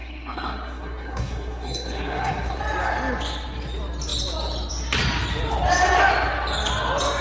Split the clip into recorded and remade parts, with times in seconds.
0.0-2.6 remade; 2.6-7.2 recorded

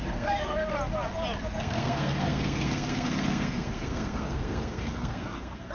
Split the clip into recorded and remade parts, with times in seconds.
0.0-0.7 remade; 0.7-1.6 recorded; 1.6-5.7 remade

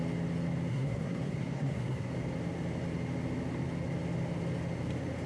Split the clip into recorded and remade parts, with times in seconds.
0.0-0.7 recorded; 0.7-2.1 remade; 2.1-5.3 recorded

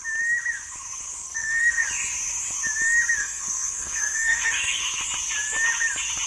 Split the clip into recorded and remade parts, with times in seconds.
0.0-1.2 recorded; 1.2-1.8 remade; 1.8-3.2 recorded; 3.2-5.0 remade; 5.0-6.3 recorded

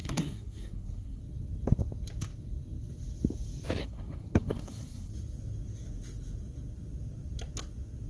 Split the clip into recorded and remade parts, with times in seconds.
0.0-1.2 remade; 1.2-3.8 recorded; 3.8-5.1 remade; 5.1-8.1 recorded